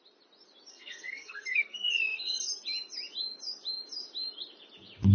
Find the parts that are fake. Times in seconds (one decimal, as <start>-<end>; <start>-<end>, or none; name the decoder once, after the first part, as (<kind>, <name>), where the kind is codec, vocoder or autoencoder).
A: 0.7-2.5 (codec, SNAC)